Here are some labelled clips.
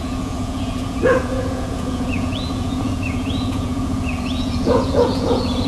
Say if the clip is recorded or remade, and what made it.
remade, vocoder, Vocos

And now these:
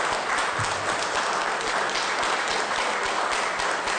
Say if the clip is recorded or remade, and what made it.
recorded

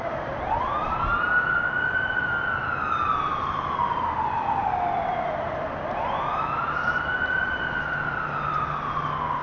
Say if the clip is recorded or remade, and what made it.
recorded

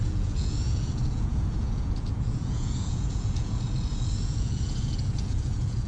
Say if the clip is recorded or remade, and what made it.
remade, vocoder, Vocos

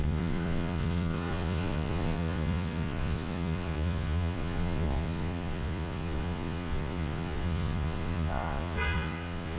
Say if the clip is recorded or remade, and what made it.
remade, vocoder, Vocos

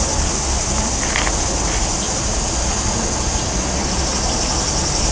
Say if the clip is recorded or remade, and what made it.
recorded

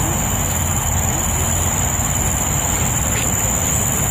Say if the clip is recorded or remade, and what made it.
recorded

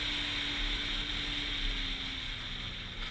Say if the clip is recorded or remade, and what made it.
recorded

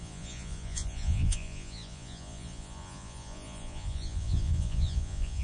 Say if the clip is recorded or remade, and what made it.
remade, vocoder, Vocos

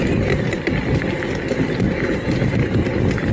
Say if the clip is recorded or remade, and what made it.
recorded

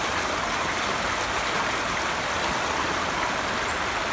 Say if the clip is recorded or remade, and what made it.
recorded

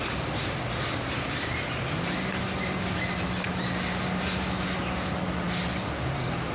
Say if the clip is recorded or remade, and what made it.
recorded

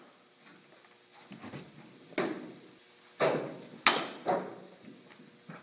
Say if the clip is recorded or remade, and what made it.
recorded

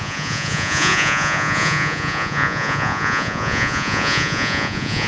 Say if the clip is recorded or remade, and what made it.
remade, vocoder, Vocos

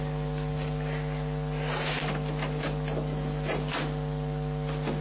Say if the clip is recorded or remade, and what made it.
recorded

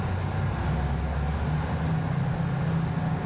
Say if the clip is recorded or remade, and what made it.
recorded